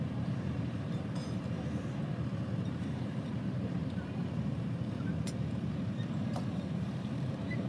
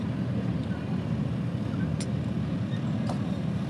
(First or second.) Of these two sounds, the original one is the second